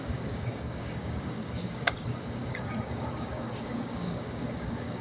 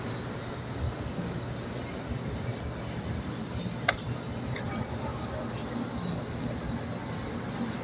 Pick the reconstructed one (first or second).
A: first